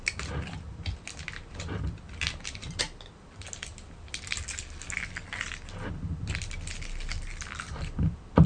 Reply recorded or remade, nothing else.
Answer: recorded